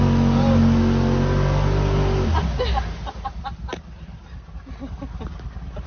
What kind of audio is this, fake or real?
real